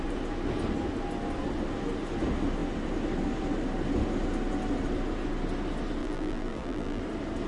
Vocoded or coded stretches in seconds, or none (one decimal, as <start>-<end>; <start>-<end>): 6.0-7.0